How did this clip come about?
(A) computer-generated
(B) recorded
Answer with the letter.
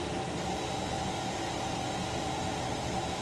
B